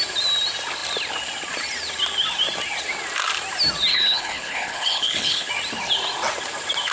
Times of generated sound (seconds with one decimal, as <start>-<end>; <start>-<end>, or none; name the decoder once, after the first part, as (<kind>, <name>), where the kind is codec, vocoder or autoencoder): 3.9-5.5 (codec, HILCodec)